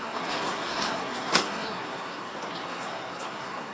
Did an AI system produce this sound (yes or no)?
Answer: yes